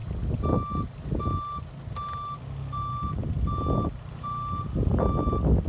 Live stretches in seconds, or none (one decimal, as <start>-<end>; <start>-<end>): 0.0-5.7